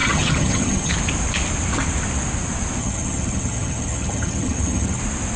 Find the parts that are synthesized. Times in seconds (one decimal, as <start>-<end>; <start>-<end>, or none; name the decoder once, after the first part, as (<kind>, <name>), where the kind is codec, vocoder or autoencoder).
0.0-0.9 (vocoder, HiFi-GAN); 2.8-5.0